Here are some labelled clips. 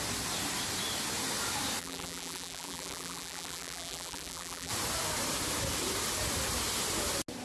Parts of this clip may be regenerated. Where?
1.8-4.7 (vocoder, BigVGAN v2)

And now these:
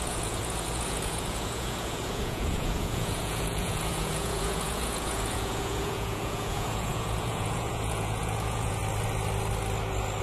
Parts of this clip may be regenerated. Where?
0.0-8.8 (vocoder, Vocos)

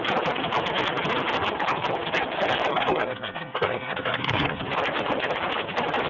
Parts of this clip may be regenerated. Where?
2.7-4.6 (codec, SNAC)

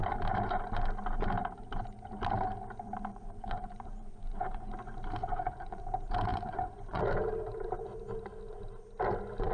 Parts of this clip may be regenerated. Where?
3.1-4.7 (vocoder, Vocos); 5.2-5.8; 6.3-7.0